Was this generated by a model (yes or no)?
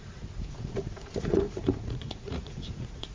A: yes